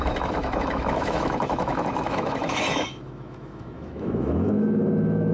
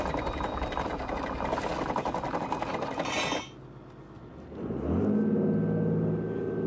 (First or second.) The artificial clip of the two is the first